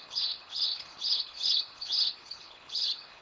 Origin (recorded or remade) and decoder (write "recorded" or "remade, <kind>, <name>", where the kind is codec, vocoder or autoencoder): remade, codec, HILCodec